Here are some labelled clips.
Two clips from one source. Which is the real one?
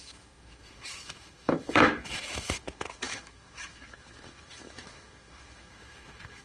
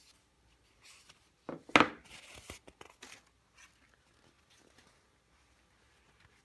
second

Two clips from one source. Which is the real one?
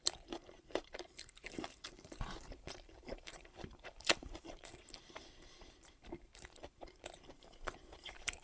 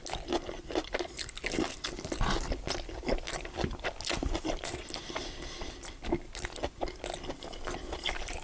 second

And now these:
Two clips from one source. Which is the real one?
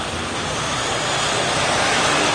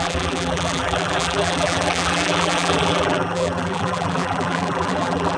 first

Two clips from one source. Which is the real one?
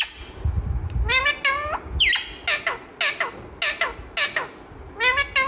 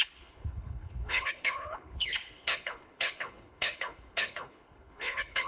first